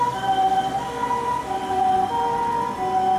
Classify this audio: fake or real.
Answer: real